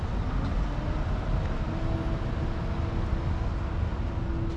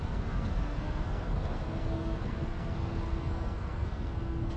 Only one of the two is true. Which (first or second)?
first